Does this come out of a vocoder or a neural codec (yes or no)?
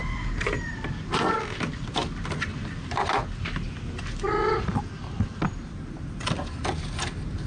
no